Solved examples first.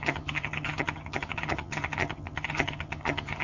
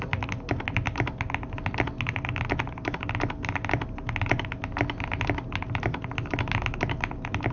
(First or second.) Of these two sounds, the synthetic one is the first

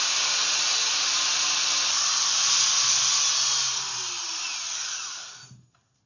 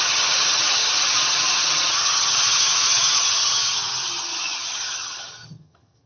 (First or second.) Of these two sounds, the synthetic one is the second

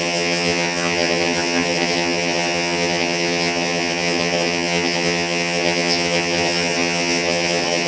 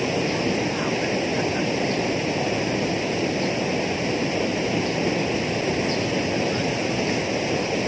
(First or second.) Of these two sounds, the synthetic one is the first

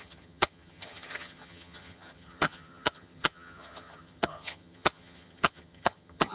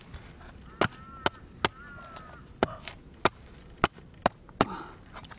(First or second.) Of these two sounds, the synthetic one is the first